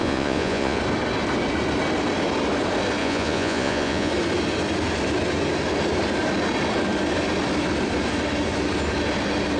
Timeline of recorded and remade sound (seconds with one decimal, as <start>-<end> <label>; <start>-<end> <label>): 0.0-0.8 remade; 0.8-3.0 recorded; 3.0-4.1 remade; 4.1-9.6 recorded

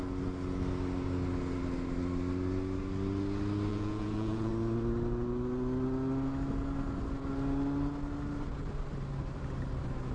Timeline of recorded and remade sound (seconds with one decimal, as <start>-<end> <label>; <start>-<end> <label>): 0.0-3.7 recorded; 3.7-4.5 remade; 4.5-10.1 recorded

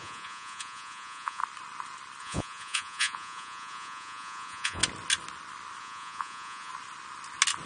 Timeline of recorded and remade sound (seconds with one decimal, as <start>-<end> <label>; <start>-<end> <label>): 0.0-1.4 remade; 1.4-2.2 recorded; 2.2-4.8 remade; 4.8-5.8 recorded; 5.8-6.7 remade; 6.7-7.7 recorded

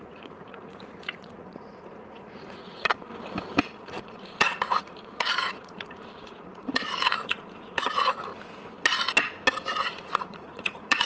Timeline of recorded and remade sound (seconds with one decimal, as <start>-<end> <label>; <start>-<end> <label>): 0.0-3.1 remade; 3.1-3.6 recorded; 3.6-8.3 remade; 8.3-9.8 recorded; 9.8-11.1 remade